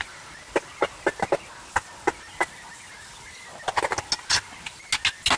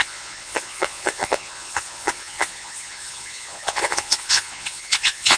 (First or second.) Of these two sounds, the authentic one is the first